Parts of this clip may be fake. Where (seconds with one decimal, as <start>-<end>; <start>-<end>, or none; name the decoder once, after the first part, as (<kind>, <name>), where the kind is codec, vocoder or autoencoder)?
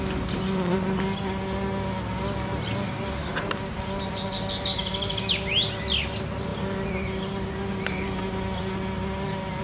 none